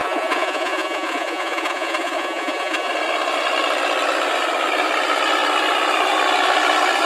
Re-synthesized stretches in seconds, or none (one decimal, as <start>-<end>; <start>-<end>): 0.0-2.9